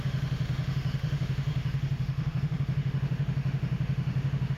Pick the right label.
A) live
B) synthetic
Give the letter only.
B